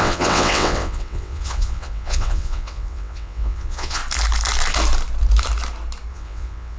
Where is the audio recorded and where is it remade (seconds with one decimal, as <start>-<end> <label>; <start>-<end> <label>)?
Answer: 0.0-4.0 remade; 4.0-6.1 recorded; 6.1-6.8 remade